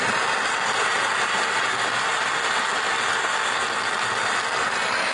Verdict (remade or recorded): recorded